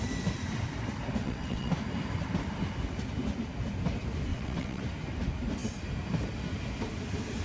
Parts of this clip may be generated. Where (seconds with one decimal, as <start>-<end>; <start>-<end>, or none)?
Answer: 1.2-1.7; 4.3-4.8